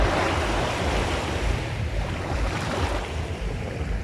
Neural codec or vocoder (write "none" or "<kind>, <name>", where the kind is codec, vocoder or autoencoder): none